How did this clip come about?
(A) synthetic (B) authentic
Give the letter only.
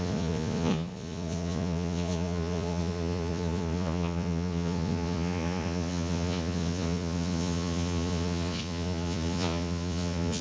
A